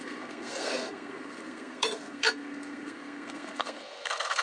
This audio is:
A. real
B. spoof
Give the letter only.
B